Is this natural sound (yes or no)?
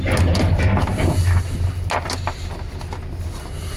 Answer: yes